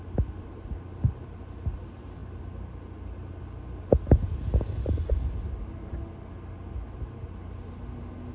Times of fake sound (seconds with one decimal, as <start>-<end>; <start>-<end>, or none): none